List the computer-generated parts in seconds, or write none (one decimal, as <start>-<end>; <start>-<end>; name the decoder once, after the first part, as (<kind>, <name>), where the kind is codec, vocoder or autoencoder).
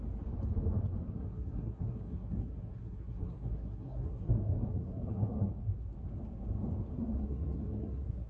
1.0-5.5 (codec, SNAC); 6.9-8.3